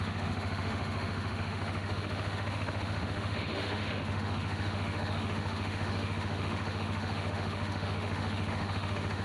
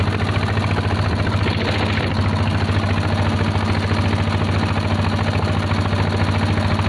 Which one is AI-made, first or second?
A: first